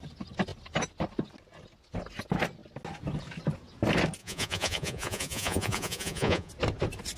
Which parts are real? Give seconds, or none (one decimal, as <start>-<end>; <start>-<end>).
0.0-4.2; 6.5-7.2